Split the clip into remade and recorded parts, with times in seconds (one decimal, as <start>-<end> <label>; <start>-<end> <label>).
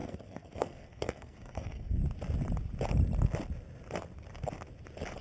0.0-2.0 remade; 2.0-5.2 recorded